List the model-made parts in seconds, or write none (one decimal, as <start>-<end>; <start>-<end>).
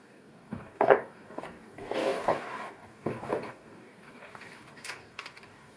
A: 0.0-5.8